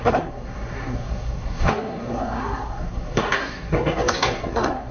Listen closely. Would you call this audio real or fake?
fake